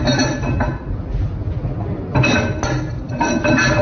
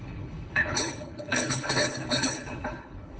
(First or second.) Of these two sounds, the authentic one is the first